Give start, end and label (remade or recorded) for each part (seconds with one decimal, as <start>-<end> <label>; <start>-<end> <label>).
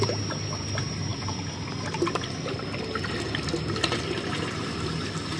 0.0-5.4 recorded